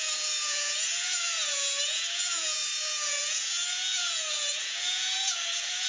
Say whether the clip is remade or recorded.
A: remade